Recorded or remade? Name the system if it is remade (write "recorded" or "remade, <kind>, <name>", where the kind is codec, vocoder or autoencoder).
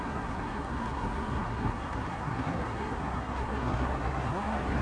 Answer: remade, codec, SNAC